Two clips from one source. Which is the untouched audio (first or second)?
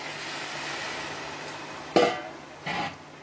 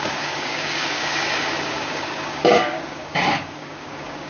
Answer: first